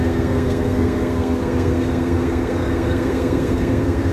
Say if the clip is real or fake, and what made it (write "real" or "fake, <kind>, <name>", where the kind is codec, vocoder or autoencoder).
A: fake, codec, SNAC